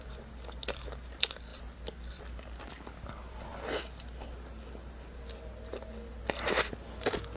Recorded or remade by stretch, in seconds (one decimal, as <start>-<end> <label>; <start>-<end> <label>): 0.0-7.4 recorded